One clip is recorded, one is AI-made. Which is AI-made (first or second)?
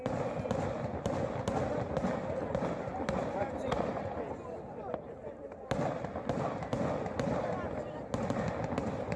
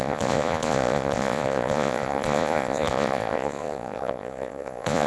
second